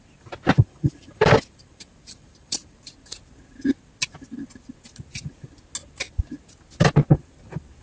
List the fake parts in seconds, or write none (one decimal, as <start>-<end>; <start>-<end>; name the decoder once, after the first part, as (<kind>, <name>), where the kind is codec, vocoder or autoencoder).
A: 0.6-2.9 (vocoder, BigVGAN v2)